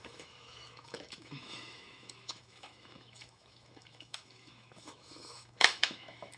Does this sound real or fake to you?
fake